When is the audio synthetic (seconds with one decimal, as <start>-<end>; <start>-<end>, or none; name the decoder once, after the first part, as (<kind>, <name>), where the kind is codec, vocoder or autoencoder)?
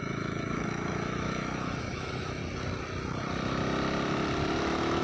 0.0-2.4 (autoencoder, DAC-VAE); 4.6-5.0